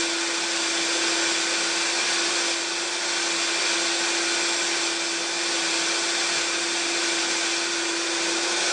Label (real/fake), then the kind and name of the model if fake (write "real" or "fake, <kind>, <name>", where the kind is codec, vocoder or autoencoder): real